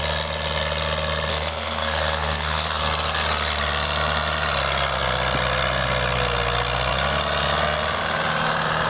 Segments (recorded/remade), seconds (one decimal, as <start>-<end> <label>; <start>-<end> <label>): 0.0-1.3 recorded; 1.3-2.8 remade; 2.8-8.9 recorded